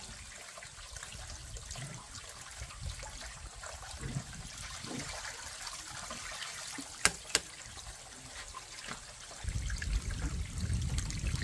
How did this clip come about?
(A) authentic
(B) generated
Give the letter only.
A